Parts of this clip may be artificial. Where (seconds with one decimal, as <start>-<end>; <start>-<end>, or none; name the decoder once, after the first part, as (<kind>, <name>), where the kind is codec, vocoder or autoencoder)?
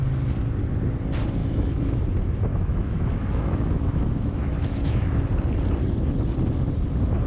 1.4-2.0 (autoencoder, DAC-VAE); 2.5-5.2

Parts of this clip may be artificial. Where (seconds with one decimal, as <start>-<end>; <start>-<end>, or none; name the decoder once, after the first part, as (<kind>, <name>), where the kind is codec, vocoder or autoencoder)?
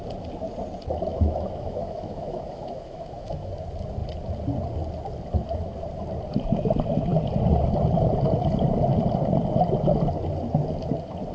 1.1-3.5 (autoencoder, DAC-VAE)